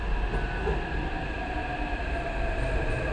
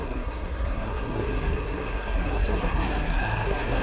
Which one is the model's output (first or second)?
second